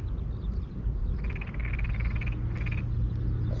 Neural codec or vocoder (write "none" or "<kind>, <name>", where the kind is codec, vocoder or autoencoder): none